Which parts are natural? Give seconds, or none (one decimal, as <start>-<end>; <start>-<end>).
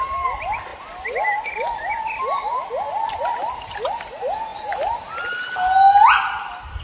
0.0-6.8